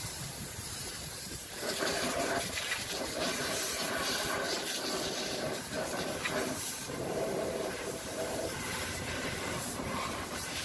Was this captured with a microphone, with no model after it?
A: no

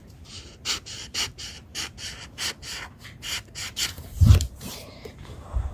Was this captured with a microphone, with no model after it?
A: no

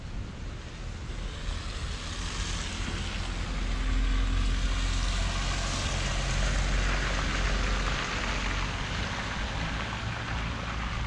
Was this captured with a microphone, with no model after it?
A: yes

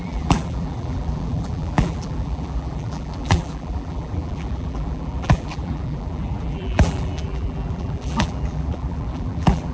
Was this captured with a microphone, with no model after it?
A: no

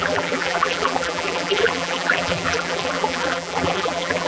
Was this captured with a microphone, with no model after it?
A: no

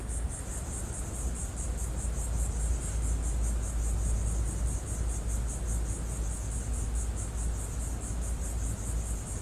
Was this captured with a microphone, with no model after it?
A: yes